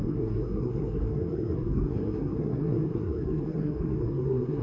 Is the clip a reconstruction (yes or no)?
yes